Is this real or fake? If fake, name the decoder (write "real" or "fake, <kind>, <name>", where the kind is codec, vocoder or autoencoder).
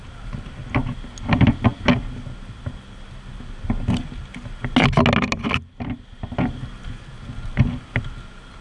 real